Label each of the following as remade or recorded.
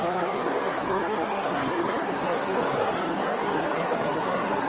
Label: remade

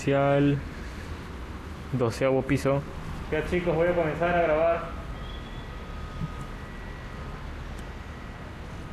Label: recorded